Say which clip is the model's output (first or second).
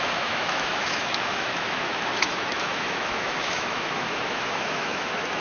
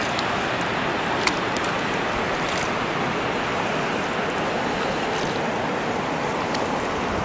first